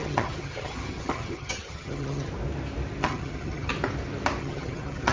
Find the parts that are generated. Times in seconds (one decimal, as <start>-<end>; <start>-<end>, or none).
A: 0.0-2.3; 3.0-3.7; 4.4-5.1